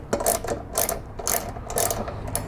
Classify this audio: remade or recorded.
recorded